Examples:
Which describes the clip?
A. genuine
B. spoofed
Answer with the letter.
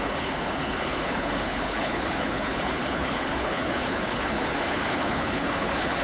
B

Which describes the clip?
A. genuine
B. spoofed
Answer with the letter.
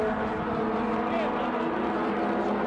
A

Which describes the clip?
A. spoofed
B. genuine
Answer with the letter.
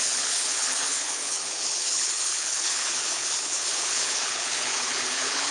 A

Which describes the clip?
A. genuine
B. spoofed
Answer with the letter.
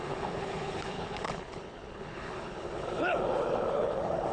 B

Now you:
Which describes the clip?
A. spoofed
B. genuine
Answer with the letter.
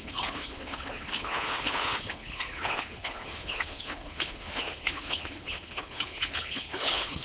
A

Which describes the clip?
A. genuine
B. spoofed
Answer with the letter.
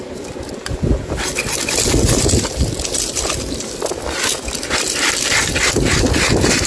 A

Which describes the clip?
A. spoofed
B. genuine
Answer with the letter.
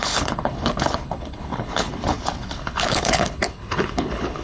A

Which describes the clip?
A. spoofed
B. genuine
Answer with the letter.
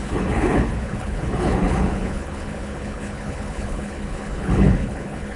A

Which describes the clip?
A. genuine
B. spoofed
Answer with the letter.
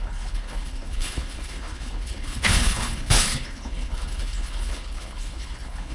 B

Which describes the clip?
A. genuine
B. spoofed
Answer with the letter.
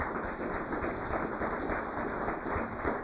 A